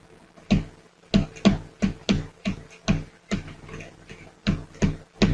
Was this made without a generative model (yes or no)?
yes